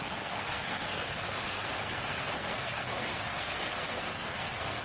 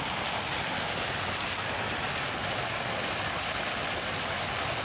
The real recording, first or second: second